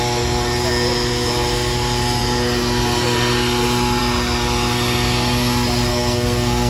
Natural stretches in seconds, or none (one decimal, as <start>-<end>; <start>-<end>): 0.0-5.9